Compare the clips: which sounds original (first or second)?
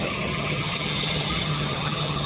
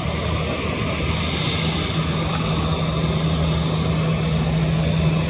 second